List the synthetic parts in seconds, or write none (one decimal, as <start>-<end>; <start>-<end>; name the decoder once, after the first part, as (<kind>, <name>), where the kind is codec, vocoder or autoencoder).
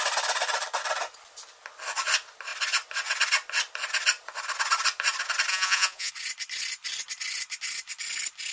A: 5.5-6.1 (vocoder, Vocos)